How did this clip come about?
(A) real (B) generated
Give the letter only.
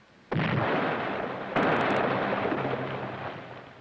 A